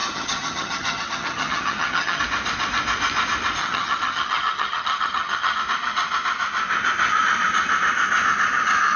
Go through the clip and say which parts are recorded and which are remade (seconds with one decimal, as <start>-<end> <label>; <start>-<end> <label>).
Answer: 0.0-2.2 remade; 2.2-3.6 recorded; 3.6-5.6 remade; 5.6-9.0 recorded